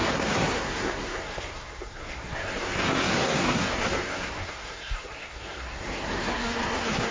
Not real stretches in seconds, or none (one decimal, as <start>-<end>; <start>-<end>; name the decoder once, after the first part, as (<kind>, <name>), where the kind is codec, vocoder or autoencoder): 0.0-7.1 (codec, SNAC)

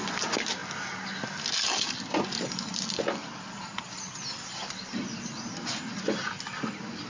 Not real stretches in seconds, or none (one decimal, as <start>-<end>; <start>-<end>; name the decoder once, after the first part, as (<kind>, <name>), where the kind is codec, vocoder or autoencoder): 3.2-3.8 (vocoder, BigVGAN v2); 4.6-5.5

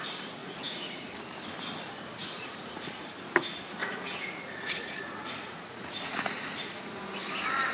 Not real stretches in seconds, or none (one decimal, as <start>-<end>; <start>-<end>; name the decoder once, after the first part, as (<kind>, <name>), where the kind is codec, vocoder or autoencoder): 0.4-1.2 (vocoder, Vocos); 2.2-2.9; 3.8-7.3

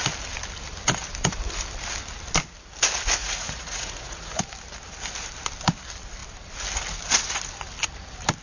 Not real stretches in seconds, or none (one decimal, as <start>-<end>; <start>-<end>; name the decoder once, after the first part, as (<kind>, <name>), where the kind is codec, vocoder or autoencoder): 3.2-4.4 (vocoder, Vocos)

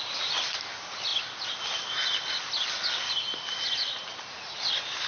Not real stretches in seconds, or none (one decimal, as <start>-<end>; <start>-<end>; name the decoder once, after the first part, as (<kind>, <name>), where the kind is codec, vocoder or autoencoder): none

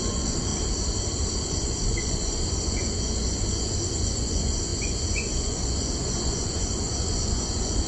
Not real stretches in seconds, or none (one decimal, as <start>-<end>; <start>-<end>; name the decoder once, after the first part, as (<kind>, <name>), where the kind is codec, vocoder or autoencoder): 0.0-0.5 (vocoder, Vocos); 1.4-7.9

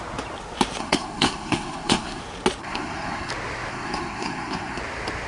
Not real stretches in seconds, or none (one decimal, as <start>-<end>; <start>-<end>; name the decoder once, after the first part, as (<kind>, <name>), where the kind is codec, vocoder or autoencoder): 0.8-2.2 (codec, SNAC); 2.6-3.3; 3.7-4.8